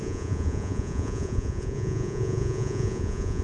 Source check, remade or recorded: remade